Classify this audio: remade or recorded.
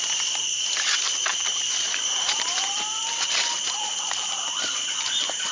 remade